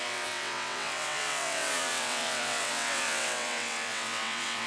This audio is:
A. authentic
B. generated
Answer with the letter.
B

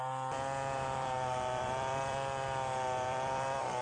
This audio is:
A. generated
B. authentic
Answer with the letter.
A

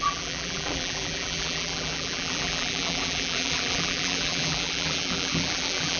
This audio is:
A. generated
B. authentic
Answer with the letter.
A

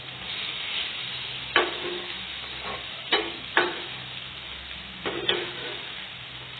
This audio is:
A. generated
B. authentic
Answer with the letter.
B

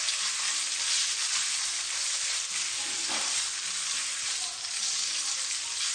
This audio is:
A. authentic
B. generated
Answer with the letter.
A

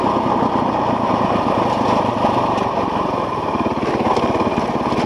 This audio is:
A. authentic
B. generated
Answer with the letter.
A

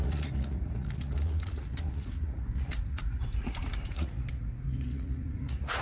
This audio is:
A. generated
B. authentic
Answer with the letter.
A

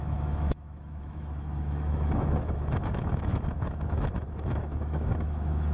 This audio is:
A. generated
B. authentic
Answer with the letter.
A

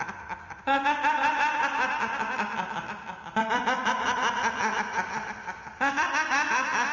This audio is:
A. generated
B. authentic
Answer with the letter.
B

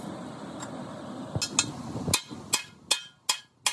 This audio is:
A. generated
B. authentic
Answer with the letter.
B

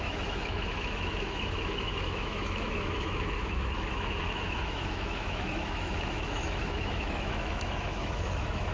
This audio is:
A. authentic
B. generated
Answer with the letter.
B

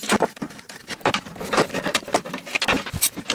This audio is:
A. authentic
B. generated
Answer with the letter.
B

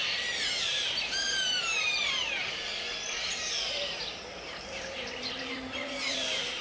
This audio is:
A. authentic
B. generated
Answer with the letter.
B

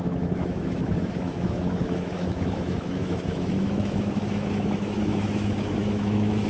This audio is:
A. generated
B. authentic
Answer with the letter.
A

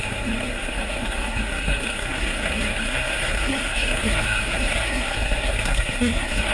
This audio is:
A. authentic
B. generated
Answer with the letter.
B